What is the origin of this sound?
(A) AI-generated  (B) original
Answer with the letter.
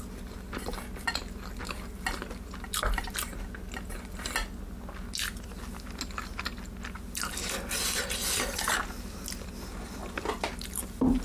B